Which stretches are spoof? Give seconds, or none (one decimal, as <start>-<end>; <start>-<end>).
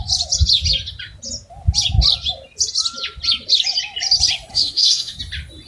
4.5-5.2